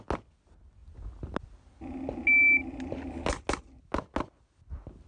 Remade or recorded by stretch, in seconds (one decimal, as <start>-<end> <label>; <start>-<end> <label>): 0.0-5.1 recorded